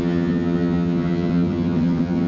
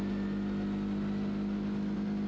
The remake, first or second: first